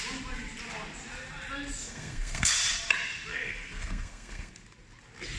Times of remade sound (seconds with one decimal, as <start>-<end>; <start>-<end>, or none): 1.8-2.5; 3.3-4.5